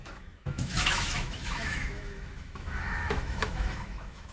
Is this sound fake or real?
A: fake